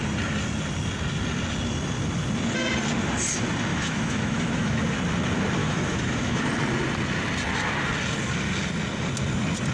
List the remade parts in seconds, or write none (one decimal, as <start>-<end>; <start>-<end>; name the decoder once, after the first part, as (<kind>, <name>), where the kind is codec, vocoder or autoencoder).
3.7-4.8 (autoencoder, DAC-VAE); 5.6-6.4